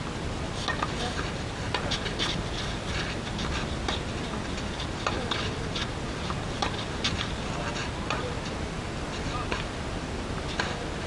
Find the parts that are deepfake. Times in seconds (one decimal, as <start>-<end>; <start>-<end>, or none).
none